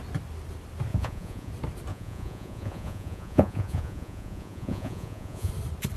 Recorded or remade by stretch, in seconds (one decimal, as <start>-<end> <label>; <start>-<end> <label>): 0.0-0.9 recorded; 0.9-1.5 remade; 1.5-1.9 recorded; 1.9-5.5 remade; 5.5-6.0 recorded

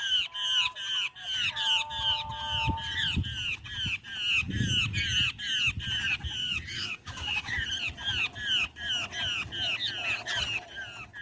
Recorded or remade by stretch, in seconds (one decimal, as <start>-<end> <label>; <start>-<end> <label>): 0.0-6.4 recorded; 6.4-7.5 remade; 7.5-11.2 recorded

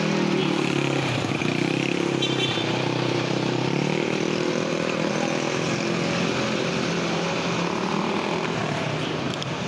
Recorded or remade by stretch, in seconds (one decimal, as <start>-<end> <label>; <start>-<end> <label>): 0.0-0.4 recorded; 0.4-5.1 remade; 5.1-8.6 recorded; 8.6-9.7 remade

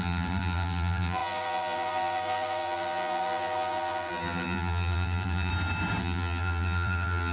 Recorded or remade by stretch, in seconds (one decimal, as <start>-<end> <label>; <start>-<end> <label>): 0.0-5.5 remade; 5.5-6.0 recorded; 6.0-7.3 remade

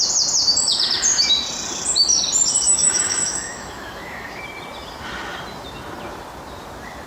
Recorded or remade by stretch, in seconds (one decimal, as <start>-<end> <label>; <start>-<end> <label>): 0.0-2.7 recorded; 2.7-4.4 remade; 4.4-7.1 recorded